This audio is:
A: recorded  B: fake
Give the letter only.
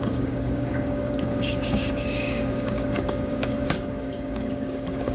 B